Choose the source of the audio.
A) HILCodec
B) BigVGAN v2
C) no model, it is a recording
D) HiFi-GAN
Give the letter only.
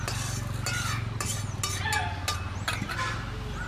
C